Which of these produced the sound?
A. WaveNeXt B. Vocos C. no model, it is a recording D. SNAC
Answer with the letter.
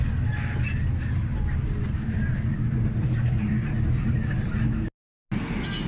C